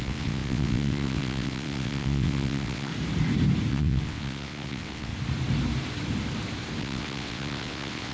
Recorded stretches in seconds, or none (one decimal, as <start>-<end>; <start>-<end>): 2.9-3.7; 5.1-6.8